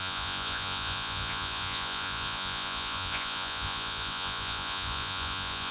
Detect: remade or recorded remade